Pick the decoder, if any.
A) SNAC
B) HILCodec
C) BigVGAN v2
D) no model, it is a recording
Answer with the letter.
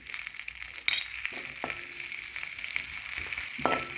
D